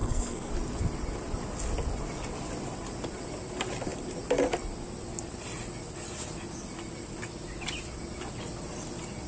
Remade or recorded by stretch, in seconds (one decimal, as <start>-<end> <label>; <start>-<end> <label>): 0.0-0.5 remade; 0.5-9.3 recorded